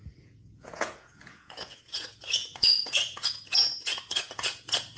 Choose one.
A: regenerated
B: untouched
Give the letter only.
A